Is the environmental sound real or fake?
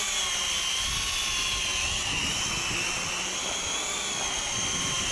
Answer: real